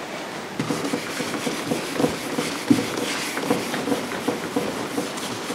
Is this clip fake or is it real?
real